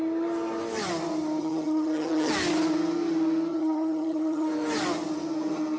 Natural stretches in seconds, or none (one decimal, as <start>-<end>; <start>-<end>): 0.0-1.4; 2.3-3.5; 4.5-5.8